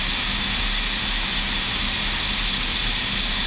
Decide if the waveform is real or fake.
real